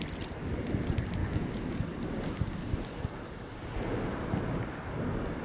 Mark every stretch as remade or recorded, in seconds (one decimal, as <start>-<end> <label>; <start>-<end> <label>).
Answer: 0.0-1.2 recorded; 1.2-1.8 remade; 1.8-5.4 recorded